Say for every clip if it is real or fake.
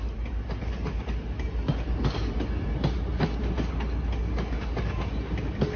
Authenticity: real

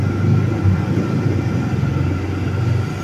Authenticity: real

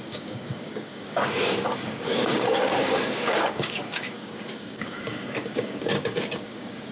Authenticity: fake